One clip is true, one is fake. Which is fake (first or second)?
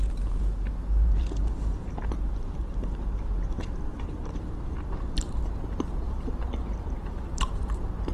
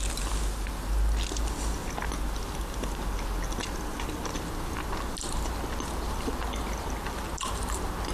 first